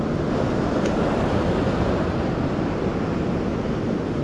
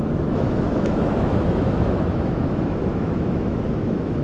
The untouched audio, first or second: first